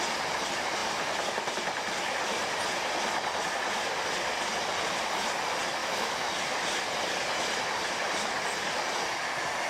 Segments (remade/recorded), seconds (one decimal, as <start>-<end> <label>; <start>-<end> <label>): 0.0-5.8 recorded; 5.8-6.3 remade; 6.3-9.7 recorded